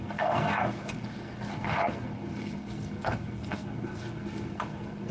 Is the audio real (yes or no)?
no